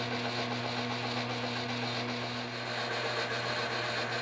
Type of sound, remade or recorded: recorded